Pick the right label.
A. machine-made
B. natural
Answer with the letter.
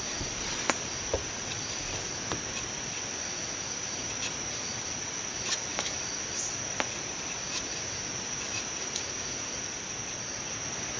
B